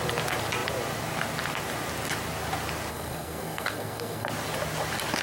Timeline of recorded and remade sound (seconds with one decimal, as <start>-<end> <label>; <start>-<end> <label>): 0.0-2.9 recorded; 2.9-4.3 remade; 4.3-5.2 recorded